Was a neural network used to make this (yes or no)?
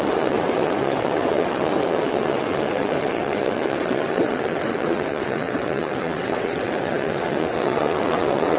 yes